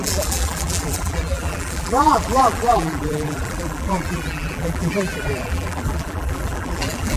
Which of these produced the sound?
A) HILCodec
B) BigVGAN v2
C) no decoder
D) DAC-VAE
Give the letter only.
B